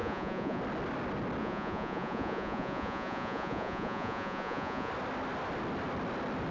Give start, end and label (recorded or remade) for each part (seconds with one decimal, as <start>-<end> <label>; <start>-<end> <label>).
0.0-0.6 remade; 0.6-1.4 recorded; 1.4-4.9 remade; 4.9-6.5 recorded